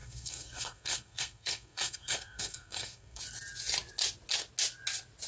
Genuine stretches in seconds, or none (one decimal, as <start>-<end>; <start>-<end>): 3.2-5.3